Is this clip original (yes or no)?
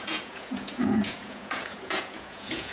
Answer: no